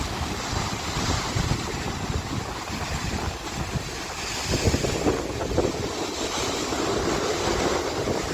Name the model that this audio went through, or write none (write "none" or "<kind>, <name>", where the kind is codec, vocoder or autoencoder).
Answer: none